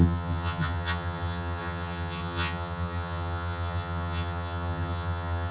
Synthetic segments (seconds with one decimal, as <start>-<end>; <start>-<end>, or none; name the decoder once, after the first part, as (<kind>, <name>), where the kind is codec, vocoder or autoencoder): 0.0-5.5 (vocoder, HiFi-GAN)